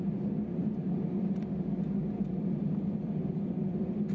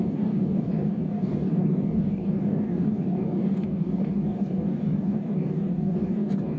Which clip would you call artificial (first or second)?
second